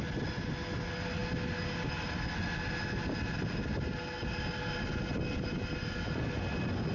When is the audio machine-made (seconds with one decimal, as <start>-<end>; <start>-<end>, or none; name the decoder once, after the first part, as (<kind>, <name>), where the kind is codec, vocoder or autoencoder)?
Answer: none